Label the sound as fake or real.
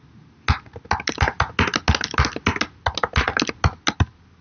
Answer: real